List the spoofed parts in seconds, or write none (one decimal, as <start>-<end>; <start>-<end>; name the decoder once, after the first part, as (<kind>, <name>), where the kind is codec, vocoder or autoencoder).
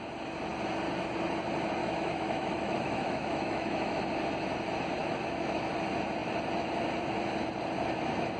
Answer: 1.8-4.0 (autoencoder, DAC-VAE); 5.0-5.7